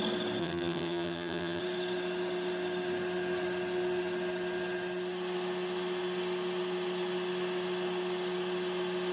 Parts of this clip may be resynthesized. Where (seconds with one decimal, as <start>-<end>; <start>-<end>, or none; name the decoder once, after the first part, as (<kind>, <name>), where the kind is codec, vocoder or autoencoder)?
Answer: 0.4-1.6 (vocoder, HiFi-GAN)